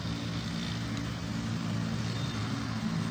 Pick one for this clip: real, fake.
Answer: real